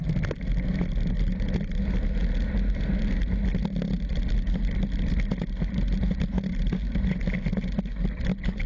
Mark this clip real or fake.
real